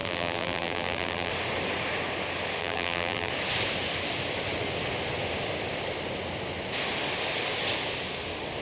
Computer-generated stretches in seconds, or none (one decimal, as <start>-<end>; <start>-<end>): 0.0-1.3; 2.6-3.3